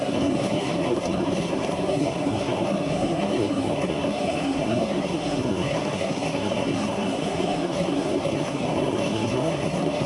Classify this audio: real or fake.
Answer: fake